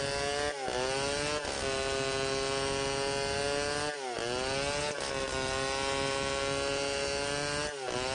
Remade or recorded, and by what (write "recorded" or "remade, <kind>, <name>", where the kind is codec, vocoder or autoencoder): recorded